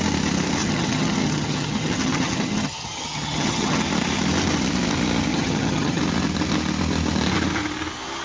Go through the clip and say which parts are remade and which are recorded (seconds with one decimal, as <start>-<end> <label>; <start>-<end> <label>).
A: 0.0-0.6 recorded; 0.6-3.8 remade; 3.8-5.3 recorded; 5.3-6.0 remade; 6.0-8.2 recorded